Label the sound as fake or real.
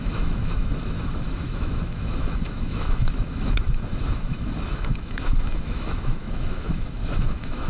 fake